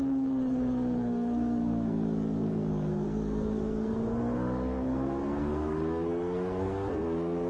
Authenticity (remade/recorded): remade